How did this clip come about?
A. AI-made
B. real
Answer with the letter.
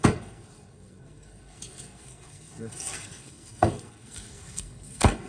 A